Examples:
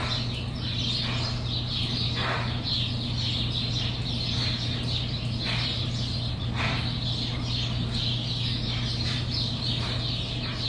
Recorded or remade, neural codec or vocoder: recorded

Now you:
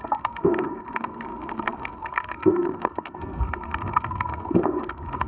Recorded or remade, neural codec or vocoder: remade, codec, SNAC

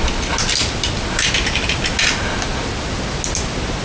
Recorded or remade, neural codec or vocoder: recorded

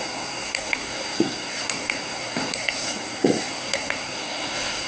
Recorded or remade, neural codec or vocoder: remade, codec, SNAC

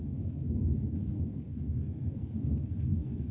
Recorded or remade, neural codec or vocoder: remade, codec, SNAC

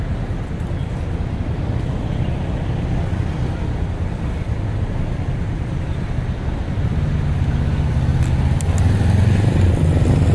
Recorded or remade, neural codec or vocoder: recorded